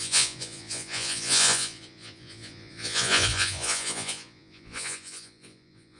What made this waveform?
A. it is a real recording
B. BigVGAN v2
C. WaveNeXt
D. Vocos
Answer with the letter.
D